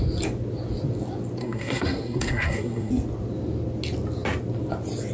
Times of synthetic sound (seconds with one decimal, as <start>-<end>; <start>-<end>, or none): 1.4-2.9